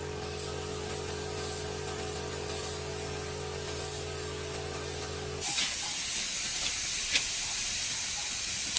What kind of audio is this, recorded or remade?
recorded